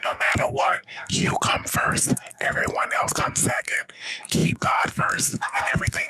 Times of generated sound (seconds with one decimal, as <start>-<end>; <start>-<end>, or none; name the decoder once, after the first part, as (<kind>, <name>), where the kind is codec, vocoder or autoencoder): 0.0-1.3 (codec, SNAC); 1.9-2.6; 3.1-6.1